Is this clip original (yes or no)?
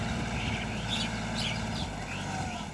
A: yes